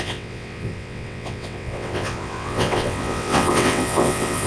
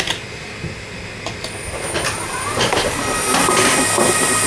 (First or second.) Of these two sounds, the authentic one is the second